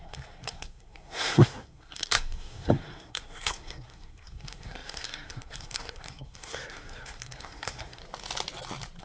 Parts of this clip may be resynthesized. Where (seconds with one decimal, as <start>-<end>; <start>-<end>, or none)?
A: 0.0-8.0